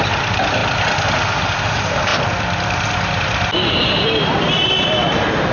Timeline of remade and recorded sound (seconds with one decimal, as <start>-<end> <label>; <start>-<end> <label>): 0.0-5.5 recorded